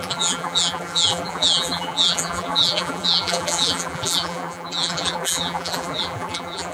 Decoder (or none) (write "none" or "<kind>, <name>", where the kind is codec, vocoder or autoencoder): vocoder, BigVGAN v2